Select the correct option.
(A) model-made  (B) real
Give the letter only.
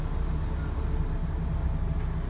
B